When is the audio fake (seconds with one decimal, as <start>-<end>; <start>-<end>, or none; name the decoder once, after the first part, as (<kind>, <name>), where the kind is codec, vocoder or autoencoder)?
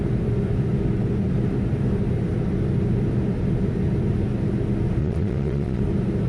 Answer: 5.0-5.8 (vocoder, Vocos)